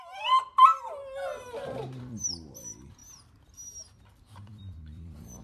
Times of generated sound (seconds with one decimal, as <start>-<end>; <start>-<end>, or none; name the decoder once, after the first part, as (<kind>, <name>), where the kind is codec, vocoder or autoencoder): 0.0-1.0 (vocoder, BigVGAN v2); 2.0-3.0; 4.1-5.4